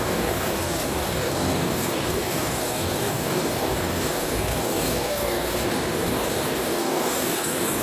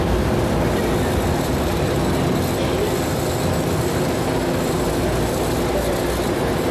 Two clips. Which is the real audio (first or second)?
second